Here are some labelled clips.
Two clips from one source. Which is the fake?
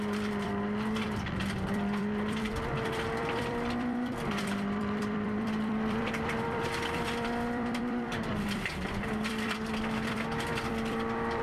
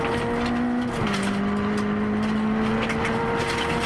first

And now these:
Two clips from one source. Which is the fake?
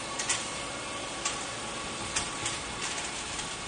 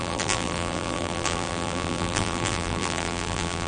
second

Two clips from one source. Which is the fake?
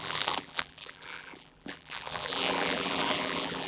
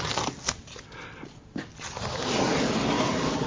first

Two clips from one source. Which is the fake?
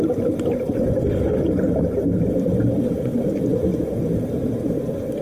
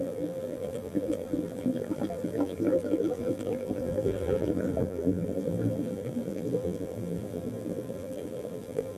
second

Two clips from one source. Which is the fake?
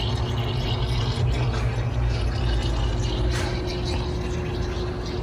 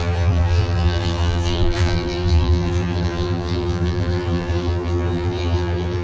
second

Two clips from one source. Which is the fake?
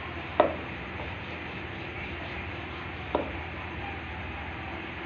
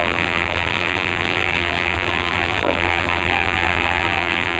second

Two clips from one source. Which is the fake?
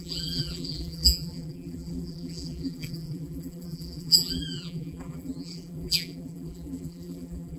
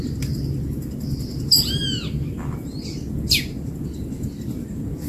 first